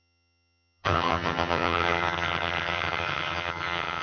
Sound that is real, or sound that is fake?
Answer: fake